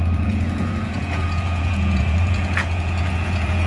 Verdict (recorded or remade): remade